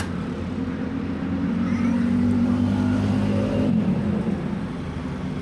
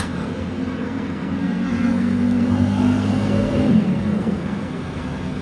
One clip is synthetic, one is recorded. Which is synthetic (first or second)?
second